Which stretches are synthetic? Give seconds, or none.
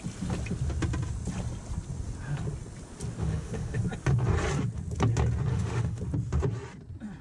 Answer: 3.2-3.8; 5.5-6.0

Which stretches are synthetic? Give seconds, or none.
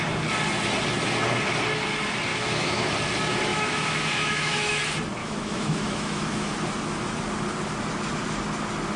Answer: 2.3-2.9; 3.5-4.8; 5.2-6.5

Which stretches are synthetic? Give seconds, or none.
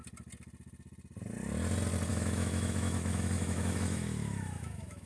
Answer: 2.1-5.1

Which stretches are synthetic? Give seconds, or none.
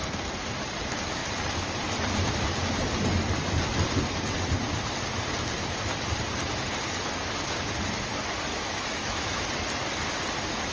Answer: 8.5-9.5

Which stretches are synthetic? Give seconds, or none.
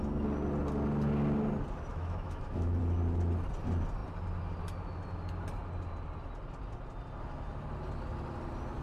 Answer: 1.9-2.8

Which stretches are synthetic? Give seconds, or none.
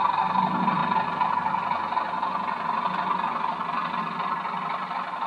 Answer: none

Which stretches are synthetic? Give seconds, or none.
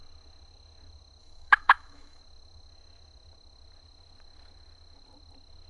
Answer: 1.2-2.2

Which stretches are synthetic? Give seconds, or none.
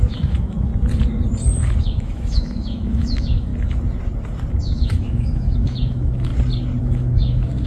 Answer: 0.0-0.7; 1.8-3.5; 4.6-6.3; 6.8-7.7